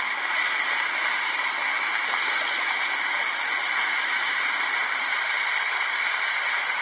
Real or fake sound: real